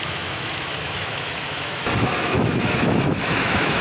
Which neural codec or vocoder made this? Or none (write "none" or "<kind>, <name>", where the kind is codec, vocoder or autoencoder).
autoencoder, DAC-VAE